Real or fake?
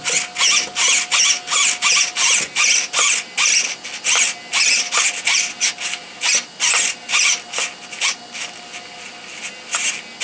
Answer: real